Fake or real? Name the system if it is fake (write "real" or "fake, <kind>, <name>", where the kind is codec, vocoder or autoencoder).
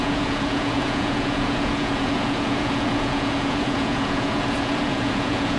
fake, vocoder, Vocos